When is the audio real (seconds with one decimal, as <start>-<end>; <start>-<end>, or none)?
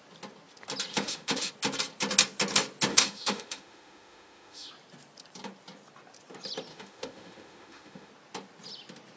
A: 0.0-0.9; 1.5-2.9; 4.7-6.7; 8.1-9.2